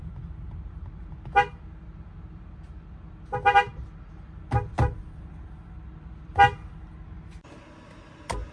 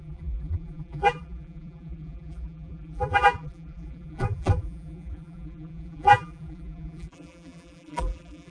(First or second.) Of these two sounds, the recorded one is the first